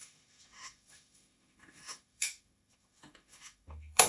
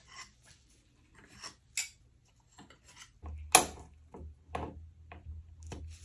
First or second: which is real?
second